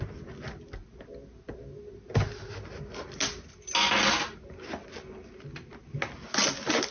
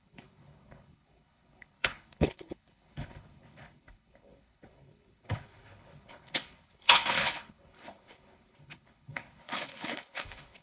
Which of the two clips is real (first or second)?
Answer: first